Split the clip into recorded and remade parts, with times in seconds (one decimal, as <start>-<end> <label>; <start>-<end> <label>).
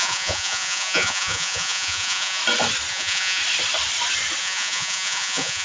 0.0-2.4 remade; 2.4-2.9 recorded; 2.9-3.4 remade; 3.4-4.4 recorded; 4.4-5.6 remade